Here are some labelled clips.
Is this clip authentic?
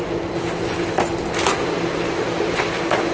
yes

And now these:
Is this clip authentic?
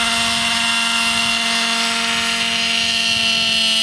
yes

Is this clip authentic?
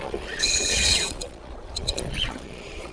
no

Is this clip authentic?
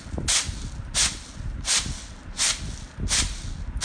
yes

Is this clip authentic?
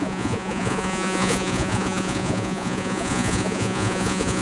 no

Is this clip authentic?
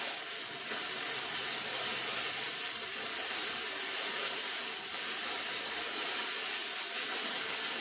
yes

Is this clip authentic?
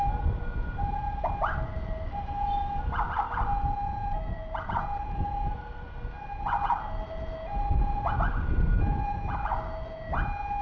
yes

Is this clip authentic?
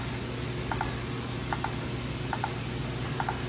yes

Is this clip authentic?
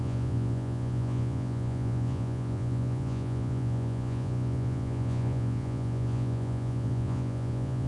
no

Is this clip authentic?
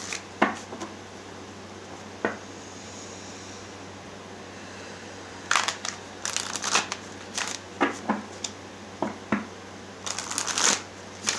yes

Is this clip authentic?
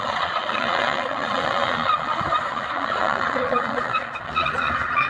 no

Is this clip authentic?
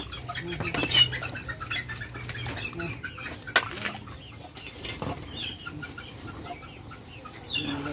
yes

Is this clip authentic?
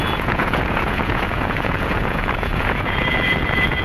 no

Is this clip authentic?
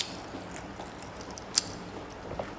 yes